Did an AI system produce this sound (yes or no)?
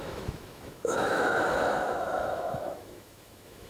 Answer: yes